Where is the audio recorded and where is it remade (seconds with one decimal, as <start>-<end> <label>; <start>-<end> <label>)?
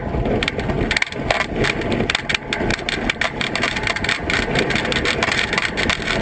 0.0-0.5 remade; 0.5-2.7 recorded; 2.7-6.2 remade